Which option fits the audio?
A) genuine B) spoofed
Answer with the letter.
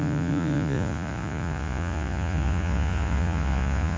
B